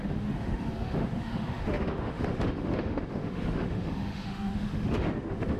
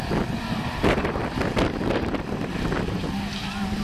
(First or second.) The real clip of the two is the second